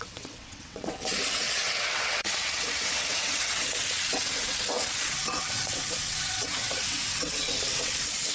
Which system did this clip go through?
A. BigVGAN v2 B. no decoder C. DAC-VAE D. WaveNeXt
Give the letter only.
D